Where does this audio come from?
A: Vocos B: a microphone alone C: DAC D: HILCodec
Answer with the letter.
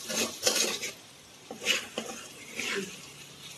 B